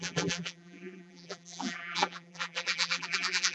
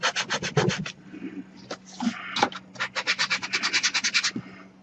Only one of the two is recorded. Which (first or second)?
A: second